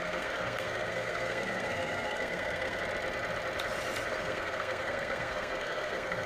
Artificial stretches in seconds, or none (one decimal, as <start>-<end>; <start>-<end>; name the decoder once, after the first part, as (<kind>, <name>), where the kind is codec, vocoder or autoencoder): 0.0-2.8 (codec, SNAC); 4.1-6.3